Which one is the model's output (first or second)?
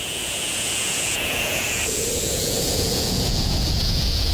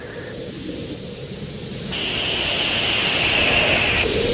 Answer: first